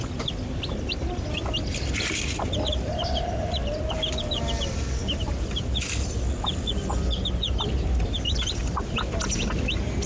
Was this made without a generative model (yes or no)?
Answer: yes